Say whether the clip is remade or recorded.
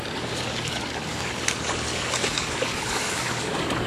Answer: remade